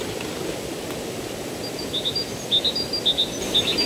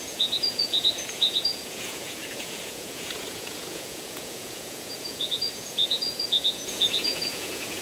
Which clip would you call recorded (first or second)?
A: first